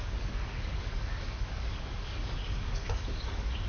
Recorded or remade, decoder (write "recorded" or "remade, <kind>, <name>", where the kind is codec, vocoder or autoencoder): remade, codec, DAC